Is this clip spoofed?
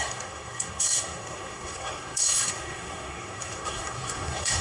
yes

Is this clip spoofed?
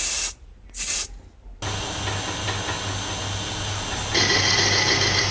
no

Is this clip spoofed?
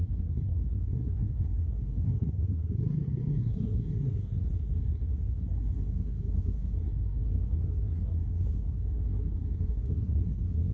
yes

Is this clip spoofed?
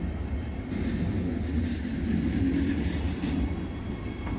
no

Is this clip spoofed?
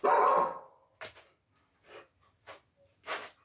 no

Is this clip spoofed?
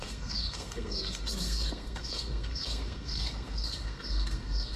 yes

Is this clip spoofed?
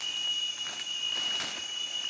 no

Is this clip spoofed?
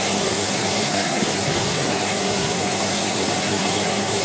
yes